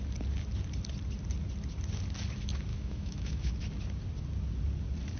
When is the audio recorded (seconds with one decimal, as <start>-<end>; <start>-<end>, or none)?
0.0-2.7; 3.5-5.2